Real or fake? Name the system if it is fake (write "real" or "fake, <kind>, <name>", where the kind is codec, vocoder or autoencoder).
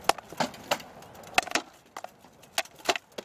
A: real